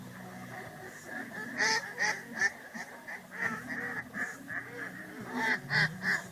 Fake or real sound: real